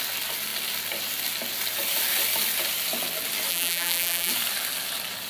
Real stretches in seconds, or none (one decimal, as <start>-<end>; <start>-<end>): 0.0-3.5; 4.3-5.3